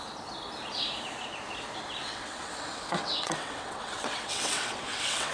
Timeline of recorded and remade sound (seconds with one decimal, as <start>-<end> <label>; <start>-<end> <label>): 0.0-2.0 recorded; 2.0-5.3 remade